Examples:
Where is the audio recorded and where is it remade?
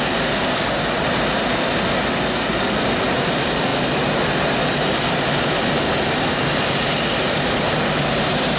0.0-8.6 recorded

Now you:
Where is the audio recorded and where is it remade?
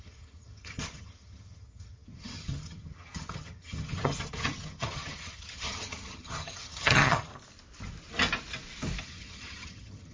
0.0-7.3 remade; 7.3-9.0 recorded; 9.0-10.1 remade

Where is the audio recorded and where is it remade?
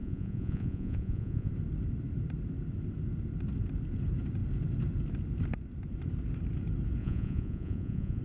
0.0-1.5 remade; 1.5-7.0 recorded; 7.0-8.2 remade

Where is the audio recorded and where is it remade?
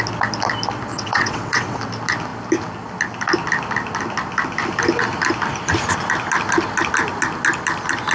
0.0-0.9 recorded; 0.9-1.8 remade; 1.8-8.1 recorded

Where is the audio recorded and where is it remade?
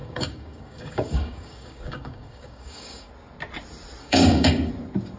0.0-3.1 remade; 3.1-4.0 recorded; 4.0-4.7 remade; 4.7-5.2 recorded